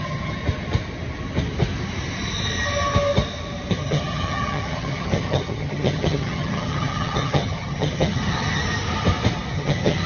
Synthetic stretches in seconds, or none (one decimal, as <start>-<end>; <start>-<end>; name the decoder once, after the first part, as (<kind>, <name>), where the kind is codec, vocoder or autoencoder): 0.0-0.4 (vocoder, HiFi-GAN); 3.7-8.6; 9.5-10.1